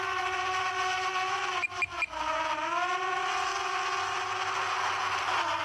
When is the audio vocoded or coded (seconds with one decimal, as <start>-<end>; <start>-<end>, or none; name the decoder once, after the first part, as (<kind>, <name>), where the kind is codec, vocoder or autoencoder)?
1.1-1.7 (vocoder, Vocos)